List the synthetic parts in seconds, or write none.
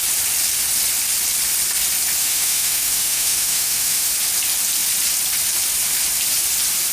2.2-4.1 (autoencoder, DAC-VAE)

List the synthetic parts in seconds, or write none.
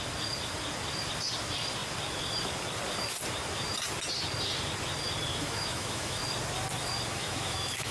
5.3-6.2 (autoencoder, DAC-VAE); 7.2-7.9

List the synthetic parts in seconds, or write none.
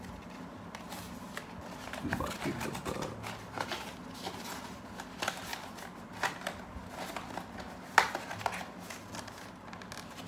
none